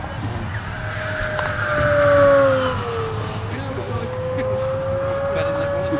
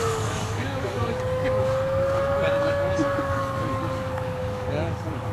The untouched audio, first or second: first